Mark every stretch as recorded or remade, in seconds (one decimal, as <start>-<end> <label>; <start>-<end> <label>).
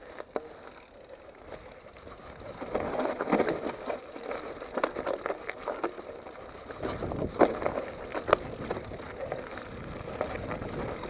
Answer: 0.0-11.1 recorded